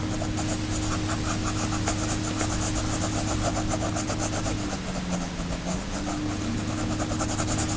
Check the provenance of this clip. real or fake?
real